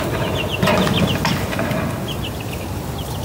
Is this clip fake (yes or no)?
no